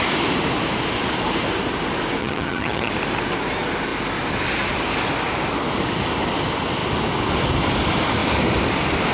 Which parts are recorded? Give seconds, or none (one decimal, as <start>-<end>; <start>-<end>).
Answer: 0.0-2.2; 2.9-9.1